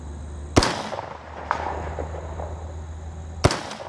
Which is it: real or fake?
real